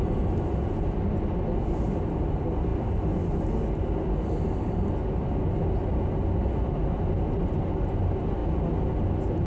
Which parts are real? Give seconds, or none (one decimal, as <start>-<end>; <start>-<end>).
0.0-9.5